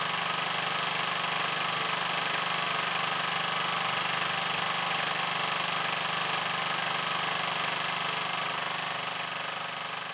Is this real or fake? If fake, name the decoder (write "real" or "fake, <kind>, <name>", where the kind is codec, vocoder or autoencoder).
real